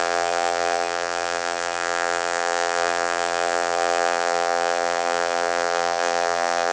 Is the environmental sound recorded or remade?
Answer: remade